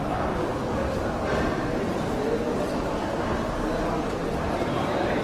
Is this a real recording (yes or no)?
yes